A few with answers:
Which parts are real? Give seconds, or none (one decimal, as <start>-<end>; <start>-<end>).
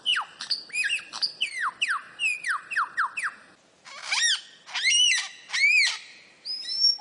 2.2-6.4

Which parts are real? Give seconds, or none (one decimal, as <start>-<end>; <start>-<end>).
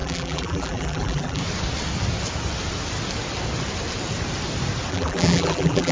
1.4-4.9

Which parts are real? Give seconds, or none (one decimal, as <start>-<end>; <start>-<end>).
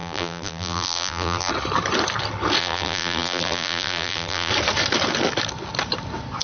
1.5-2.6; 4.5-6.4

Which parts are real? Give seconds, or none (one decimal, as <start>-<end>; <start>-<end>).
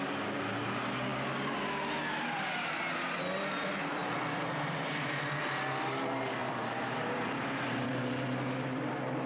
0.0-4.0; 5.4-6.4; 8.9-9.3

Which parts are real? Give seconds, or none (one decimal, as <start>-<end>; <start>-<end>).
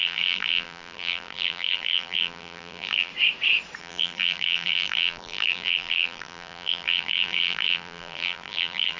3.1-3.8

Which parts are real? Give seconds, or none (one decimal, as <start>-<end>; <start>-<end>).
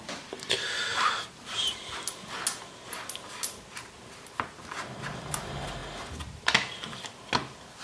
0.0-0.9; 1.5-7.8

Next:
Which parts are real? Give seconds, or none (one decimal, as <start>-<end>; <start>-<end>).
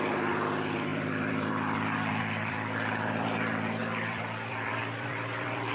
none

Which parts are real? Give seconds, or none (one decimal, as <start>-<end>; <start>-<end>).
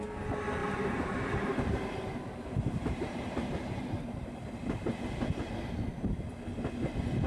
0.0-0.6; 5.0-7.3